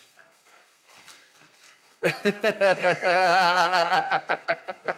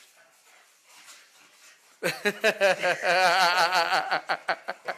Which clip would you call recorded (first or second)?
second